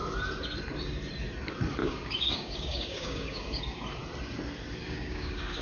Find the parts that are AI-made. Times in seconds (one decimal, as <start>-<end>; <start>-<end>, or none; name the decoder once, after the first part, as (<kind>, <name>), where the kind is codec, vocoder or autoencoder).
1.8-3.6 (codec, DAC); 4.8-5.6